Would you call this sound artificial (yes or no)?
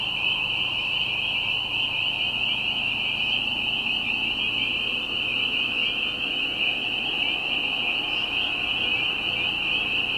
no